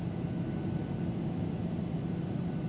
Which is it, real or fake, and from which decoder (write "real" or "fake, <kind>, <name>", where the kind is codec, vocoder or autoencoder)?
real